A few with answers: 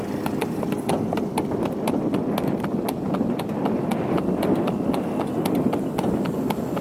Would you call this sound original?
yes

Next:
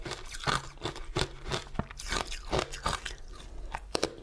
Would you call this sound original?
yes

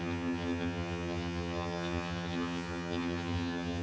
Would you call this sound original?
no